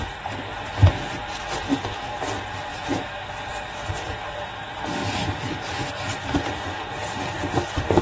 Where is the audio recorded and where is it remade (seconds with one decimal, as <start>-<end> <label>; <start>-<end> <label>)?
0.0-2.7 recorded; 2.7-4.5 remade; 4.5-8.0 recorded